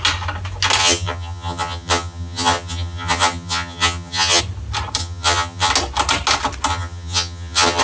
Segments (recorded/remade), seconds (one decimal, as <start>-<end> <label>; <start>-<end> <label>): 0.0-0.8 recorded; 0.8-4.4 remade; 4.4-5.0 recorded; 5.0-5.7 remade; 5.7-6.7 recorded; 6.7-7.8 remade